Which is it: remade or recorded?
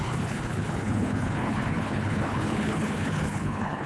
remade